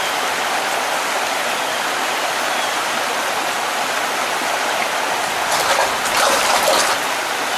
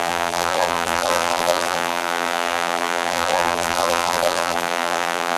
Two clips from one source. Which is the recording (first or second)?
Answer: first